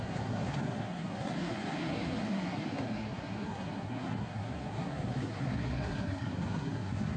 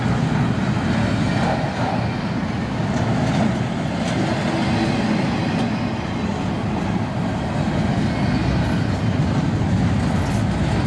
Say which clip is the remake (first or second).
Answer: first